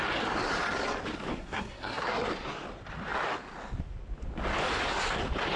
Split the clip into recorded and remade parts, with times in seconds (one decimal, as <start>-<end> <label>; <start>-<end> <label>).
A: 0.0-1.3 recorded; 1.3-2.3 remade; 2.3-5.6 recorded